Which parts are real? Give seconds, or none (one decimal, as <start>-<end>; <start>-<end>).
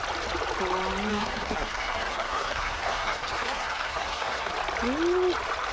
0.0-1.1; 4.5-5.7